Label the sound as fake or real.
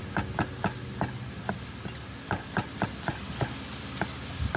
real